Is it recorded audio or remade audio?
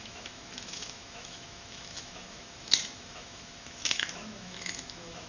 remade